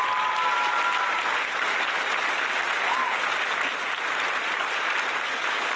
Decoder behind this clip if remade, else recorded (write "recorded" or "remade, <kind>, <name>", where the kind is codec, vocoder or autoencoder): recorded